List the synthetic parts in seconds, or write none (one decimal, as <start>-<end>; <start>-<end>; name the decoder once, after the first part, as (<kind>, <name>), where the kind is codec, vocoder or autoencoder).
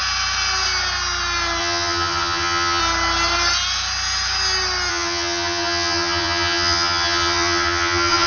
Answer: 1.6-2.8 (vocoder, HiFi-GAN); 4.9-8.3